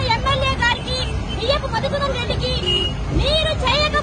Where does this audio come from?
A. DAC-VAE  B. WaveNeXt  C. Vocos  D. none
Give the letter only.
D